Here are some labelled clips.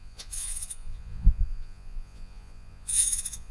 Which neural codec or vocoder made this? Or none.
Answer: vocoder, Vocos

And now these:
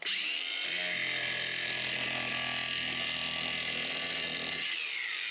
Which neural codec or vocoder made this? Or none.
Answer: none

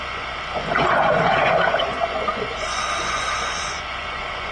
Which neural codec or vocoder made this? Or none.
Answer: vocoder, Vocos